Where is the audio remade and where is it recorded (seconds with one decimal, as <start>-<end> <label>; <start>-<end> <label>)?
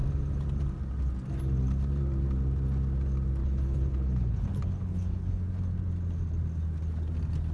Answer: 0.0-3.4 recorded; 3.4-5.4 remade; 5.4-7.5 recorded